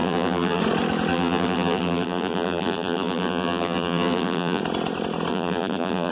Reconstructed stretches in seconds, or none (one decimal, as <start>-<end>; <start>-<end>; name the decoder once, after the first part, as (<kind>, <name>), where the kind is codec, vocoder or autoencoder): 0.0-0.6 (vocoder, BigVGAN v2); 1.1-4.6; 5.3-6.1